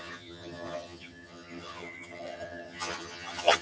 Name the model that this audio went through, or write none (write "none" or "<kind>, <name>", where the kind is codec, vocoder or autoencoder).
vocoder, HiFi-GAN